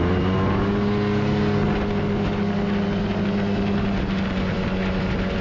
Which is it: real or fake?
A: real